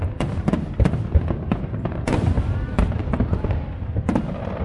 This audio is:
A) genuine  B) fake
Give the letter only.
A